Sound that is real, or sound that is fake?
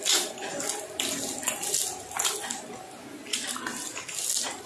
real